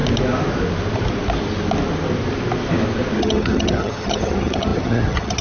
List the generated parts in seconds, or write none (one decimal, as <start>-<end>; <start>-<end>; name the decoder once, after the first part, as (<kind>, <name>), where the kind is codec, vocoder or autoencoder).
3.2-5.4 (vocoder, HiFi-GAN)